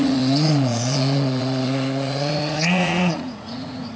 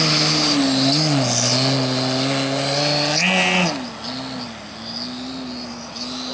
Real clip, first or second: second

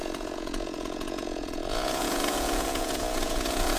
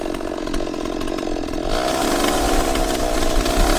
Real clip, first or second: second